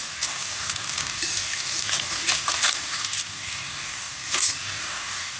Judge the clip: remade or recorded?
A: remade